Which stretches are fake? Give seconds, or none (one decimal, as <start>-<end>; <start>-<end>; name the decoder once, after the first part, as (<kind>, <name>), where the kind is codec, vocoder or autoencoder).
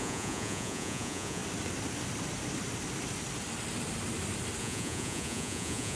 0.0-1.4 (vocoder, Vocos); 4.6-6.0